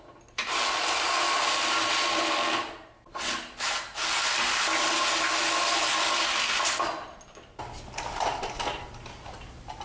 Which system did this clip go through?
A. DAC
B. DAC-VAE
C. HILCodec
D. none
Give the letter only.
D